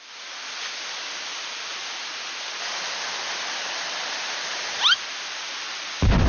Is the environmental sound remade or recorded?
recorded